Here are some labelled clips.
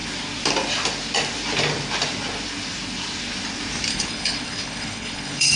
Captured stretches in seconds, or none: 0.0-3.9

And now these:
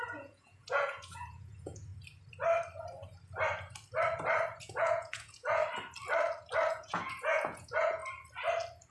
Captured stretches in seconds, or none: 1.9-4.6; 5.6-6.7; 8.0-8.9

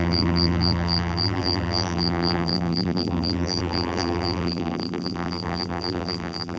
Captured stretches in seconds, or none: none

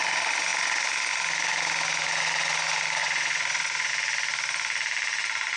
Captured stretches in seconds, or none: 0.0-3.0; 3.9-5.6

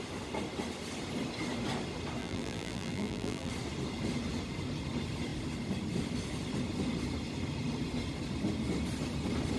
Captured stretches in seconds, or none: 0.0-2.2; 3.5-9.6